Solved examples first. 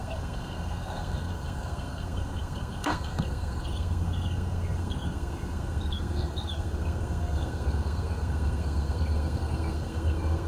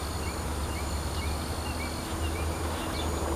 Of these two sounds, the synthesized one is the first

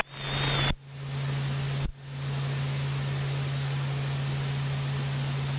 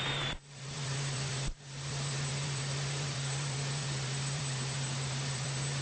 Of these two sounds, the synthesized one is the second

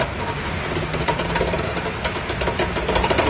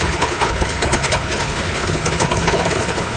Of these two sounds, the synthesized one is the second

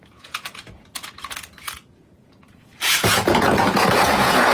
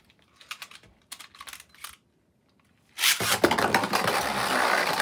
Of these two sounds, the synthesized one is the first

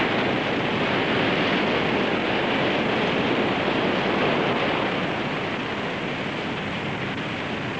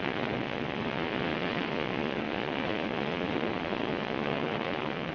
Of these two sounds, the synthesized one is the second